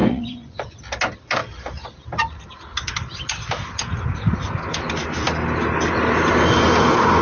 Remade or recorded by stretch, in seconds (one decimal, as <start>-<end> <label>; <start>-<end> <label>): 0.0-0.8 remade; 0.8-7.2 recorded